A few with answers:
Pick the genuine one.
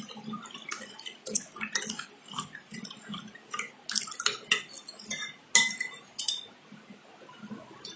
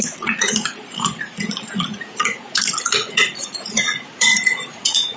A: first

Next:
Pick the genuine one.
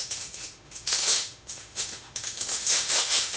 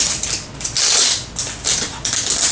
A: second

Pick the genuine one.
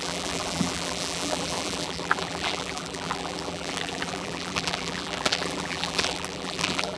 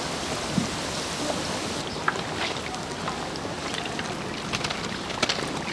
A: second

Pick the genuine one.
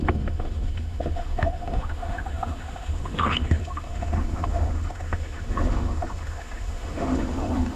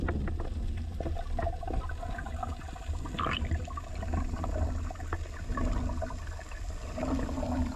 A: second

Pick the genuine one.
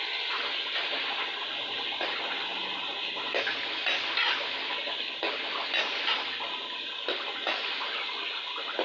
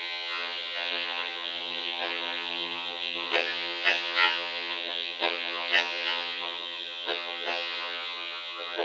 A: first